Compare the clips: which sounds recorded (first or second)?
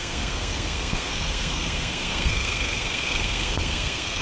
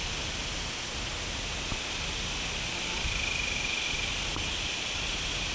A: second